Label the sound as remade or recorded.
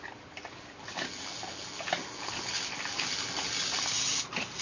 recorded